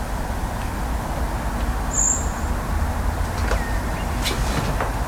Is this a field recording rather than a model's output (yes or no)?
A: yes